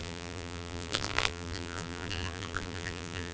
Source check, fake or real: fake